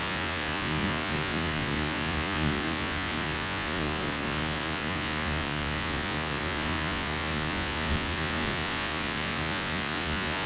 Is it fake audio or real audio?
fake